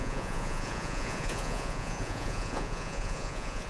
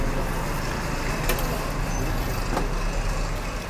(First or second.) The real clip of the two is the second